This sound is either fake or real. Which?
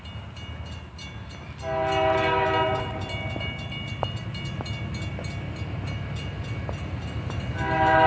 real